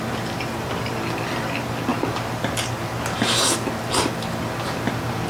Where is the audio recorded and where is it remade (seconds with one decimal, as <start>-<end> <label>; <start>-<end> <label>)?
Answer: 0.0-5.3 recorded